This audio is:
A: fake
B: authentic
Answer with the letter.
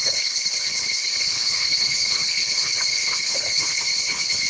A